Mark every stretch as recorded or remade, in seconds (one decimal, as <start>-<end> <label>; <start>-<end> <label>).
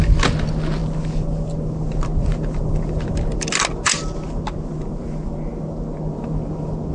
0.0-6.9 recorded